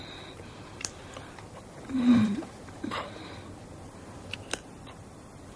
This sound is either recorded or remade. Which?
remade